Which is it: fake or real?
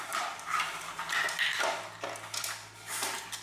real